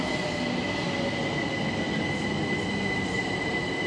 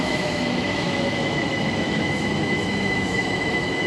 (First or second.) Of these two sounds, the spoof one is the second